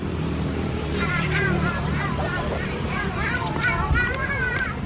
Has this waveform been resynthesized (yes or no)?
yes